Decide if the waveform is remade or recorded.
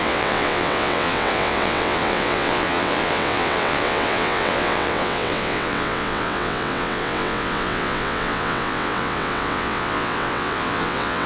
remade